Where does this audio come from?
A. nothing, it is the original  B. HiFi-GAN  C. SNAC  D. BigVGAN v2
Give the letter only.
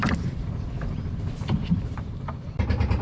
D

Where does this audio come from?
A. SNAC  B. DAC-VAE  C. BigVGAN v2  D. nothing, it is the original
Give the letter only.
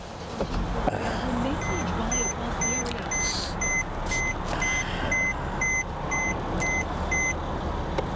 D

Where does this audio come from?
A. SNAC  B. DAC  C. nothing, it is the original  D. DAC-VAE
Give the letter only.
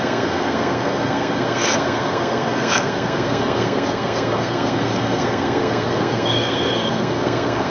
A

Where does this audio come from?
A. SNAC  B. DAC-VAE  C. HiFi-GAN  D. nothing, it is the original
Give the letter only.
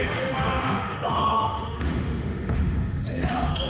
B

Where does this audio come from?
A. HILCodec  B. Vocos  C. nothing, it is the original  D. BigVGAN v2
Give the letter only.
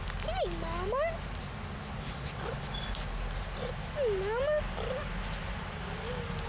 C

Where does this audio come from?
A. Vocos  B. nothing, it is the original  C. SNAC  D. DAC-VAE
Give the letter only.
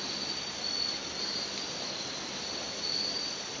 B